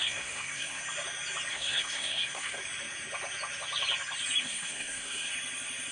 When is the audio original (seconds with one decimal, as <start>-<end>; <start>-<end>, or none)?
0.8-1.5; 2.6-4.4; 5.3-5.9